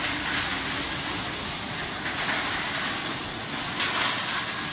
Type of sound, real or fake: real